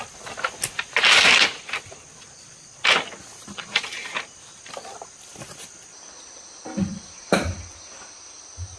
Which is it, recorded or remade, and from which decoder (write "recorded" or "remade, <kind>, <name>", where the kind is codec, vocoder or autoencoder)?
recorded